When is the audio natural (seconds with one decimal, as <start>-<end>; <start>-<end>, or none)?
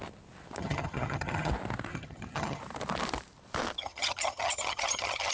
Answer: 0.0-0.6; 1.5-1.9; 2.6-3.8